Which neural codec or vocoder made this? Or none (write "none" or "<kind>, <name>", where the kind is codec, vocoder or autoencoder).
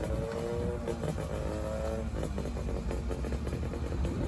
none